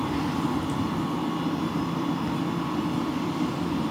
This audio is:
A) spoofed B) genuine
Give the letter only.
B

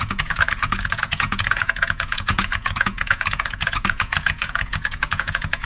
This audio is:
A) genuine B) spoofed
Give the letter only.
B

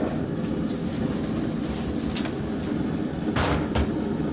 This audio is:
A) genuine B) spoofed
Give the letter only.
A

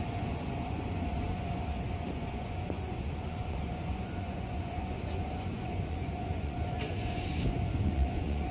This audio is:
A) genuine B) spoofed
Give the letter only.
B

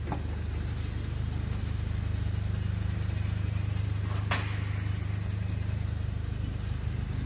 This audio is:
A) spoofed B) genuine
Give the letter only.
B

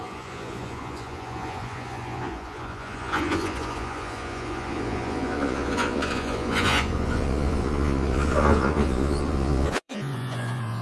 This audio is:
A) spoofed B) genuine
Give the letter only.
A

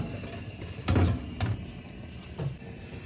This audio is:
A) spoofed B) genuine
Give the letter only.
B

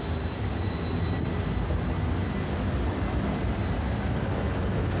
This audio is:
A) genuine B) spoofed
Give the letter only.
A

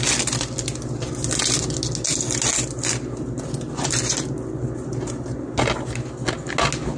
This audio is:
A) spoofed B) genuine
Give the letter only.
B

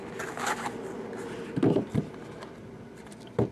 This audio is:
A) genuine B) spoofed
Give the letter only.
A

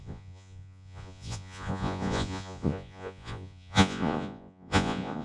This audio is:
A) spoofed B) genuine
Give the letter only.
A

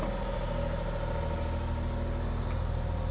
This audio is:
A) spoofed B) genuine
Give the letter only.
B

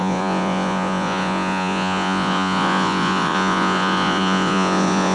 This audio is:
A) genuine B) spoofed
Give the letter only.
B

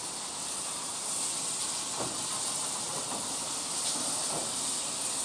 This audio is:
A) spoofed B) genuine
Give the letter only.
B